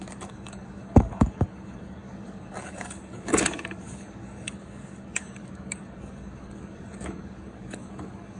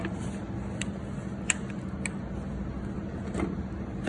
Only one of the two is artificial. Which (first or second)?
first